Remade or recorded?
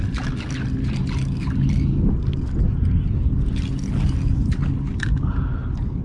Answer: recorded